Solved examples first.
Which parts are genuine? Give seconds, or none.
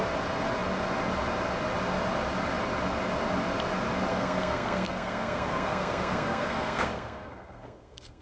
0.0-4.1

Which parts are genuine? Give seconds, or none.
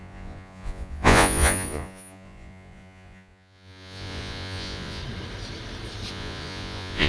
5.0-6.1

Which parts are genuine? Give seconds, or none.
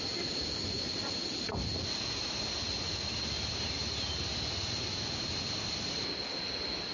0.0-6.9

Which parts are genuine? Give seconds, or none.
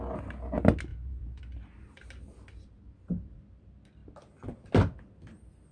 0.0-0.9; 1.4-5.7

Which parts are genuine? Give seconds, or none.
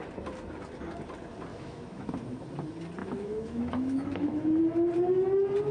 0.0-1.5; 2.1-3.0; 4.6-5.7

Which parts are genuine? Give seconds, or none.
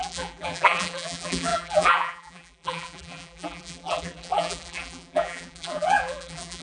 none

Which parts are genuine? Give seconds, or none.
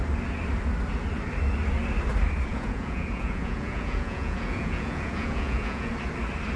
0.0-2.5; 5.9-6.6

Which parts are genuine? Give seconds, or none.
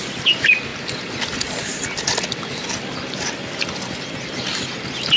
0.0-5.2